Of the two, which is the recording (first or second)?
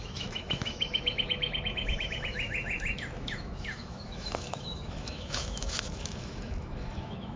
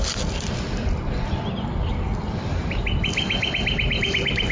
second